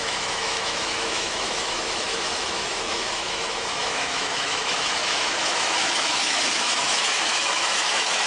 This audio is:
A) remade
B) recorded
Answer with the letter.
A